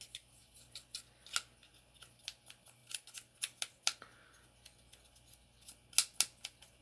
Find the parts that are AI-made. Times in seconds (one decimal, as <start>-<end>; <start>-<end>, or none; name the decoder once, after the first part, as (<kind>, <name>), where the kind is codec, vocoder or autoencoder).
none